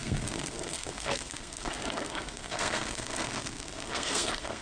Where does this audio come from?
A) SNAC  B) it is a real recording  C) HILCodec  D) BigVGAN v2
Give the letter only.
A